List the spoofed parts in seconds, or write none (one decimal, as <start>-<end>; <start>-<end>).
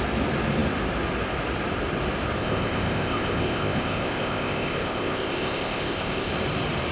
2.4-6.3